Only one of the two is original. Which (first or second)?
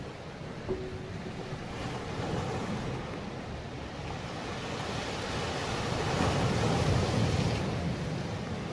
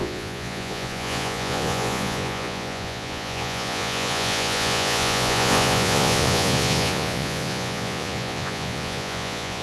first